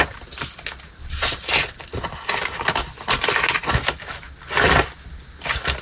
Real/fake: real